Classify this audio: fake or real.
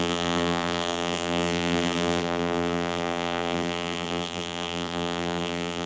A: fake